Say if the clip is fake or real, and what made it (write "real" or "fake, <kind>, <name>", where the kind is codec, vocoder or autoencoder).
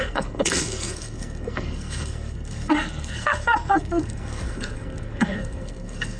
fake, codec, SNAC